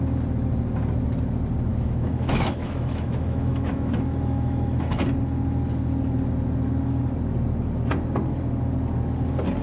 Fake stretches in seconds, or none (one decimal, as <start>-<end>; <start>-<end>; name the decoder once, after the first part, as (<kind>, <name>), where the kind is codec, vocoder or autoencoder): 1.7-5.0 (autoencoder, DAC-VAE)